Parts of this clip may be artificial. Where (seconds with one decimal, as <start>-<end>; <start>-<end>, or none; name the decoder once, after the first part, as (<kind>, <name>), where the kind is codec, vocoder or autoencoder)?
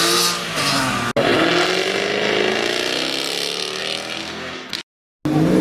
4.2-4.7 (codec, SNAC)